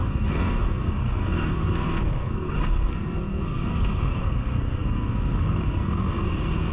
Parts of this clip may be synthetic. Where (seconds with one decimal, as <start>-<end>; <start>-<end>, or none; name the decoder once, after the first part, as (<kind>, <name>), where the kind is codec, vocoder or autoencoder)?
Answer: 0.0-6.7 (codec, SNAC)